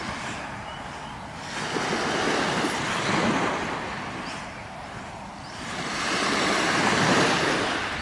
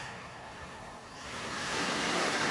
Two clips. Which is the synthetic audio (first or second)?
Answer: second